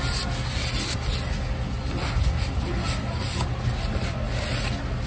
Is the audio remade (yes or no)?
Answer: no